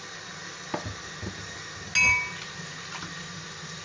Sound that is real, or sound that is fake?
real